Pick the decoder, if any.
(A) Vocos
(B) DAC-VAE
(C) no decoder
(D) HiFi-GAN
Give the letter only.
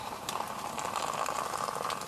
C